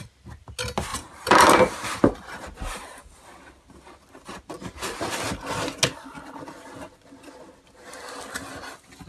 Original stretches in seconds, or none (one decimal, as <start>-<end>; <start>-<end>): 0.0-0.9; 2.8-9.1